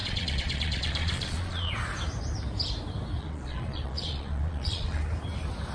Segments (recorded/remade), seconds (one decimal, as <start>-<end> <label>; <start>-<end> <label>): 0.0-1.7 remade; 1.7-3.2 recorded; 3.2-5.0 remade; 5.0-5.7 recorded